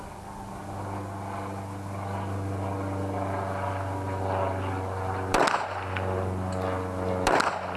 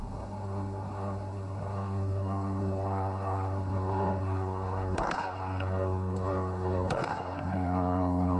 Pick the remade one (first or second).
second